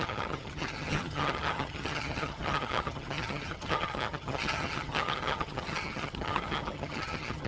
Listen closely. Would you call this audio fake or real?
fake